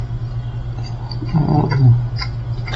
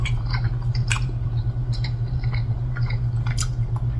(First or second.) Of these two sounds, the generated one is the second